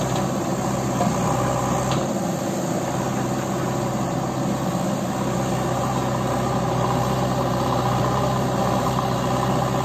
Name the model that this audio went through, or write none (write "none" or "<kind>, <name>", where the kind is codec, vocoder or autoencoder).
none